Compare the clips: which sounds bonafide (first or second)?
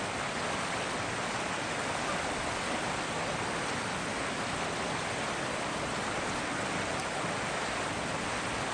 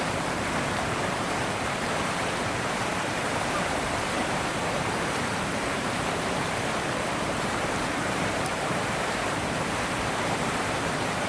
first